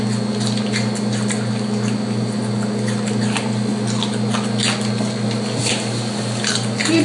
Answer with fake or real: real